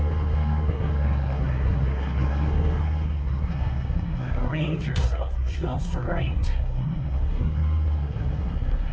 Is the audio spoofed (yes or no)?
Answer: yes